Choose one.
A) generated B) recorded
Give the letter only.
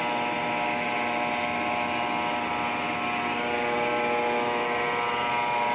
B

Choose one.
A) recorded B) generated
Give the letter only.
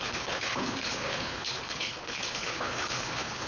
B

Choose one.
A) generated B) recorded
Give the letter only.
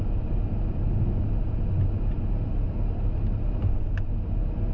B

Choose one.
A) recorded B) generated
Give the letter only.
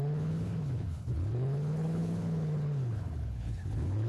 B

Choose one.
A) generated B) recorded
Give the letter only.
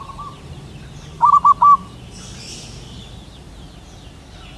B